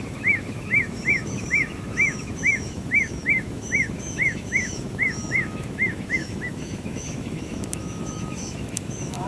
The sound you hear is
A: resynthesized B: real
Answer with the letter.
A